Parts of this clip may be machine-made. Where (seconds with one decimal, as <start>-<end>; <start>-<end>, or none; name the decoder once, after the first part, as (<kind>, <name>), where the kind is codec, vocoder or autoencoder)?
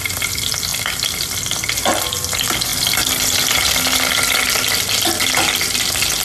none